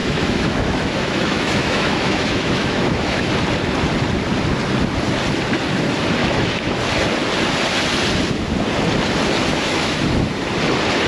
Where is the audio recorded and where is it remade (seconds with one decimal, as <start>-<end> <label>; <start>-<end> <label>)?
0.0-3.3 remade; 3.3-6.2 recorded; 6.2-6.8 remade; 6.8-9.4 recorded; 9.4-10.0 remade; 10.0-11.1 recorded